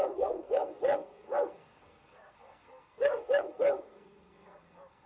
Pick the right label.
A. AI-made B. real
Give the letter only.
A